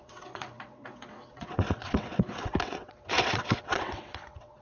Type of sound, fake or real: fake